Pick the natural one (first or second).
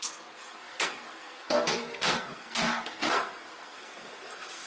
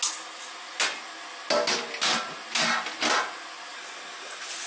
second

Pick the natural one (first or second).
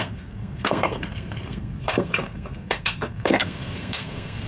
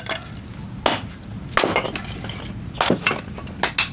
second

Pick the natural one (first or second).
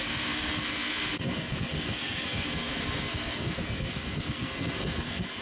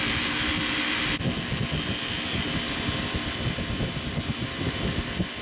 second